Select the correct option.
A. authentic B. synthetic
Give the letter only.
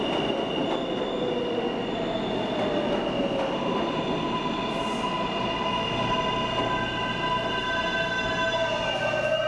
A